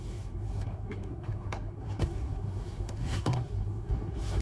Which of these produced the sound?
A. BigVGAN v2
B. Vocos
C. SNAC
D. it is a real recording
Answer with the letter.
C